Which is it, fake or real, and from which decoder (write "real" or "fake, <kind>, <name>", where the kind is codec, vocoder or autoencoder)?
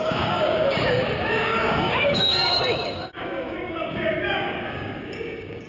fake, codec, DAC